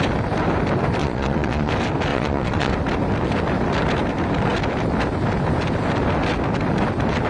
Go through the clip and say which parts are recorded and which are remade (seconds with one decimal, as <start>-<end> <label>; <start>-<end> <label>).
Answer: 0.0-1.0 recorded; 1.0-1.7 remade; 1.7-2.1 recorded; 2.1-2.7 remade; 2.7-7.3 recorded